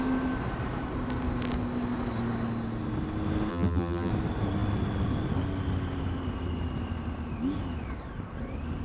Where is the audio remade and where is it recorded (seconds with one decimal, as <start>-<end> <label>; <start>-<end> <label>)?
0.0-3.5 recorded; 3.5-4.1 remade; 4.1-8.8 recorded